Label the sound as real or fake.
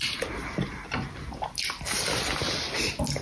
real